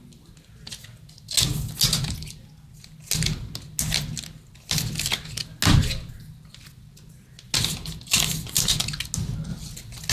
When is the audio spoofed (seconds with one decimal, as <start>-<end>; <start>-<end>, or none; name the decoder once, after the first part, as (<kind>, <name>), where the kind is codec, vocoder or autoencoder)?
none